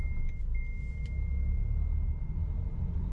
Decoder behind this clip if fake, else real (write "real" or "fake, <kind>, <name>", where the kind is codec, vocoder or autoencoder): real